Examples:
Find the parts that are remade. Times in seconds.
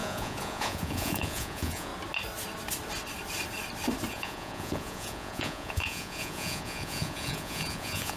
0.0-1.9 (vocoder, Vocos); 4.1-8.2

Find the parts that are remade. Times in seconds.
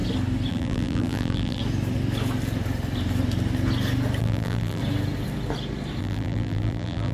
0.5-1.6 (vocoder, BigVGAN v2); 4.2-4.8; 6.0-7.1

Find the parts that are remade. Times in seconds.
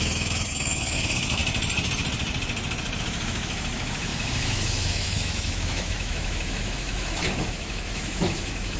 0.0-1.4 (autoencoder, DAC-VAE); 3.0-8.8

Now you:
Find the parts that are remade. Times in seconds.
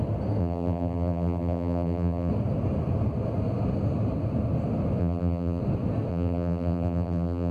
0.4-2.3 (vocoder, BigVGAN v2); 5.0-5.6; 6.1-7.5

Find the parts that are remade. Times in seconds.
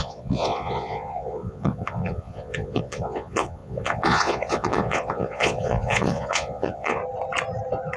0.0-7.0 (vocoder, Vocos)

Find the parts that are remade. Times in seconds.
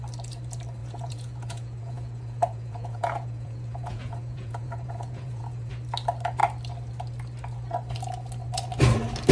0.8-5.7 (vocoder, Vocos)